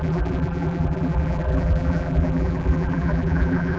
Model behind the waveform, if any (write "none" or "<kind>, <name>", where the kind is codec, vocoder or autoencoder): vocoder, BigVGAN v2